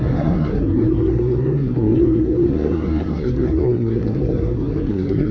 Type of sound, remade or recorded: remade